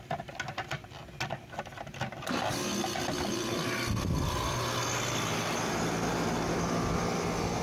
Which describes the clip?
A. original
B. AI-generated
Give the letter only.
A